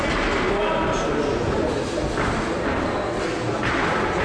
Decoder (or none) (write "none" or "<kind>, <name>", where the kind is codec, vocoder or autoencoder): none